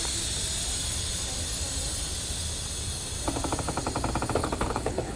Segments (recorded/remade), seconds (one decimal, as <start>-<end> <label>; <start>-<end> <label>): 0.0-4.4 recorded; 4.4-5.2 remade